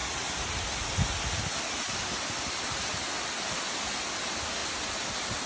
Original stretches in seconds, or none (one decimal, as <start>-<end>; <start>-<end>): 0.0-5.5